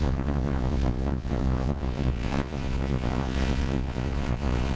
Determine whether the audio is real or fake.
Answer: fake